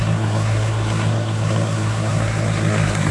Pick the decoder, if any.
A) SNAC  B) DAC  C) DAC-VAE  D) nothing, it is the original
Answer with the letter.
A